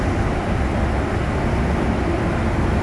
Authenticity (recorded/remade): recorded